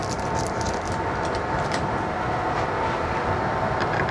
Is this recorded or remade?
recorded